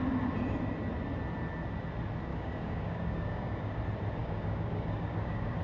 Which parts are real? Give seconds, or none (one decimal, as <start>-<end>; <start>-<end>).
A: 0.0-2.3; 3.8-4.2